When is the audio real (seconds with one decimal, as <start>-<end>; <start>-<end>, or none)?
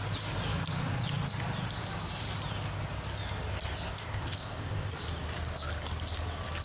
0.0-3.9; 4.9-6.6